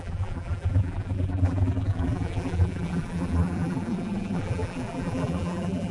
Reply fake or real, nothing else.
fake